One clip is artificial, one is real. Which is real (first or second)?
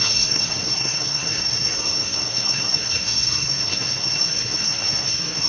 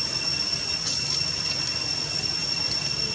second